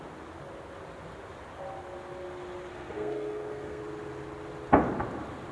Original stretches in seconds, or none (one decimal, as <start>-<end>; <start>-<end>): 0.0-2.7; 3.8-5.5

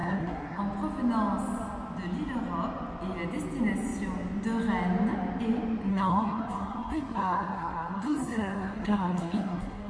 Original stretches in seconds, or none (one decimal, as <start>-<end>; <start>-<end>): 0.6-5.9

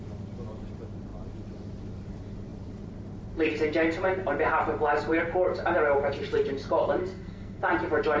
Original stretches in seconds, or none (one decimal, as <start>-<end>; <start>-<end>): 0.0-7.0; 7.6-8.2

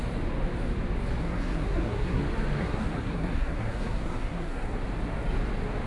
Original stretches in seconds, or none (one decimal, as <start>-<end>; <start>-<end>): 0.0-1.2; 2.2-2.6; 4.8-5.9

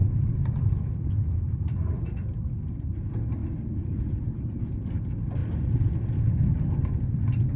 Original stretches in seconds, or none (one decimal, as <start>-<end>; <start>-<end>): 0.0-7.6